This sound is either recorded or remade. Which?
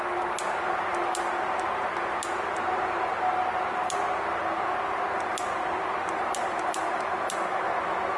recorded